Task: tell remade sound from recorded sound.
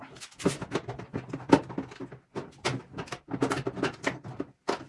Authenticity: recorded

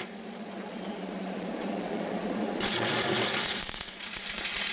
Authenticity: remade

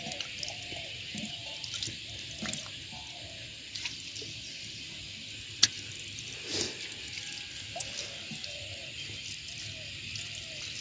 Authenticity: recorded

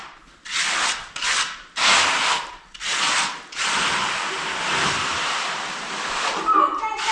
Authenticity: recorded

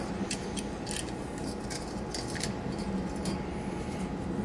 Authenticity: recorded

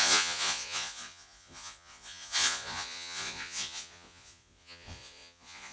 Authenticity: remade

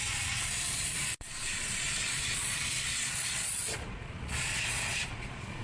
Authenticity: remade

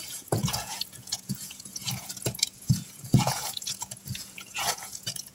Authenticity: remade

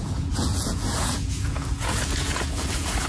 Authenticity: remade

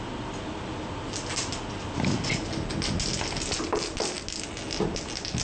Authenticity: recorded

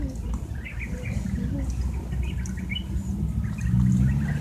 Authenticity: recorded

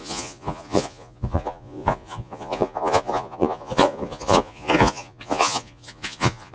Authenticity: remade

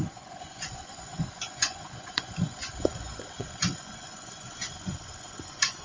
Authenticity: remade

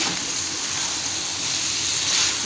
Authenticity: recorded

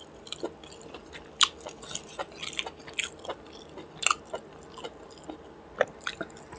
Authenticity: recorded